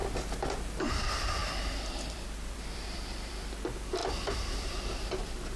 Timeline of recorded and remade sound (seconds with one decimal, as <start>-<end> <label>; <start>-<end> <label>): 0.0-0.8 recorded; 0.8-1.4 remade; 1.4-2.1 recorded; 2.1-5.6 remade